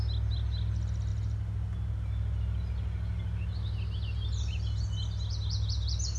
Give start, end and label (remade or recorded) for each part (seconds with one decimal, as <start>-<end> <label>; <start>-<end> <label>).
0.0-6.2 recorded